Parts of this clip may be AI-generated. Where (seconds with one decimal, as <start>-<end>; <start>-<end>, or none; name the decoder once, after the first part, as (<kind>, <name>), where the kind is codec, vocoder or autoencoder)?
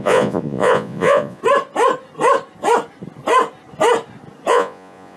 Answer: 0.0-1.4 (vocoder, Vocos); 4.5-5.2